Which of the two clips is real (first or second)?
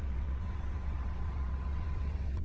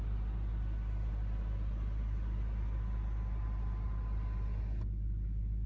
second